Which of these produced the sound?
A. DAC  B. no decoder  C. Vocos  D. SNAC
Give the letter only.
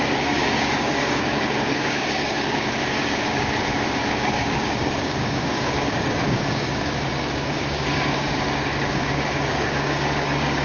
A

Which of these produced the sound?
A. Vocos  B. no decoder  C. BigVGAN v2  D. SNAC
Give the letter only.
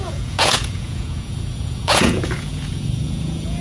A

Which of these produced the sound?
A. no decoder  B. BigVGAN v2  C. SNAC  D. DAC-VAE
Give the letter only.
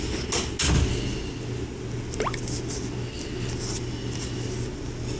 A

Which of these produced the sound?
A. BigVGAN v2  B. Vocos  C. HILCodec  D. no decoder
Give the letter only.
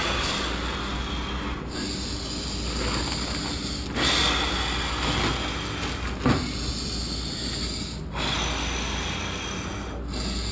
D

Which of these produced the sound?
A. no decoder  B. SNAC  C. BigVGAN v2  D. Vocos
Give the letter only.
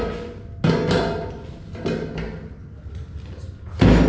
A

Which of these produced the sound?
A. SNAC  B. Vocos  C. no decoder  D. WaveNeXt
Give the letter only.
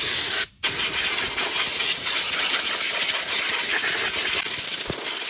C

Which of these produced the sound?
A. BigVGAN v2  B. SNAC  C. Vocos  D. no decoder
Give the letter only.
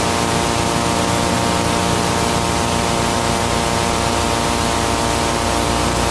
D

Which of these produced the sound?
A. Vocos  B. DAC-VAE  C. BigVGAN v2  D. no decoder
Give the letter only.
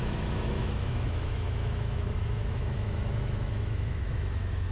B